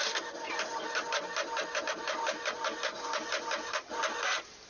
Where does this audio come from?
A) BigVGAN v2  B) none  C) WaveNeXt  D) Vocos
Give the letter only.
B